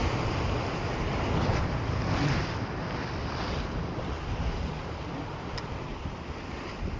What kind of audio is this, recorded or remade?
recorded